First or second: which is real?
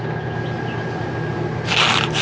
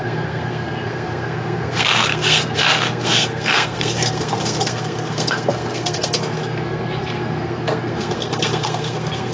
first